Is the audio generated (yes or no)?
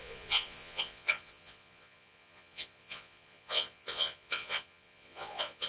yes